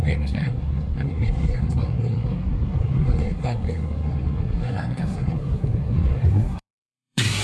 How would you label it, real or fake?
fake